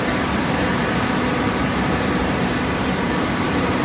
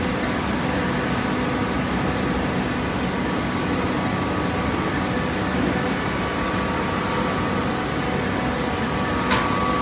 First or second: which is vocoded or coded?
first